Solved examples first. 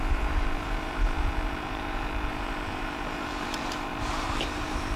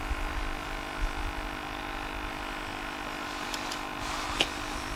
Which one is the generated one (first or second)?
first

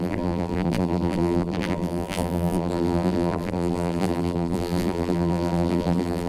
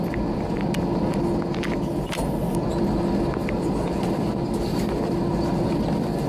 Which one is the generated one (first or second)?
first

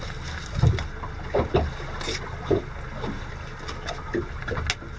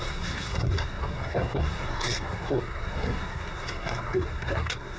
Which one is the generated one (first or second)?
second